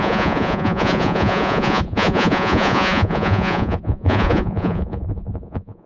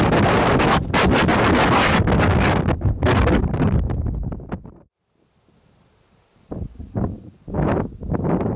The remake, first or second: first